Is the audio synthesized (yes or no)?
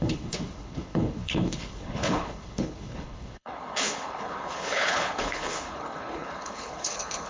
yes